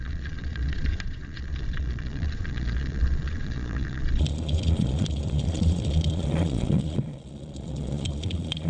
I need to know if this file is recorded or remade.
remade